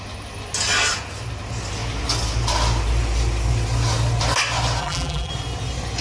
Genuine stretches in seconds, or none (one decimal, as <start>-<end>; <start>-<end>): 0.0-4.8; 5.3-6.0